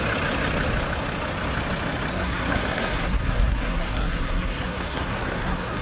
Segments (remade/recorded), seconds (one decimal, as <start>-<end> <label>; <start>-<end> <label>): 0.0-2.1 recorded; 2.1-5.8 remade